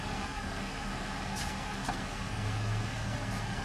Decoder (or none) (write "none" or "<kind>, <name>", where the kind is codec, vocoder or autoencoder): codec, SNAC